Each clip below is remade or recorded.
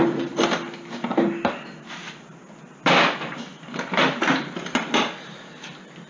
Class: recorded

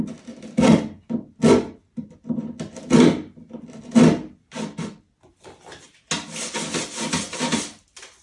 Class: recorded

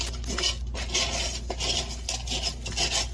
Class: recorded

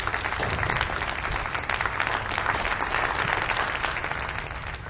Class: recorded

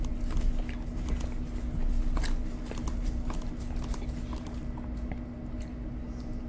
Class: recorded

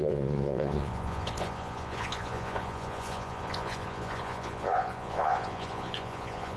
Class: remade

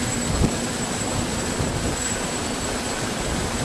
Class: remade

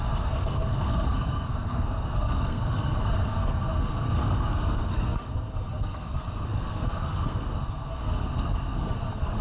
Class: remade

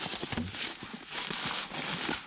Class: recorded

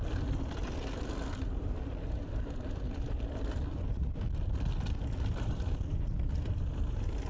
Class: recorded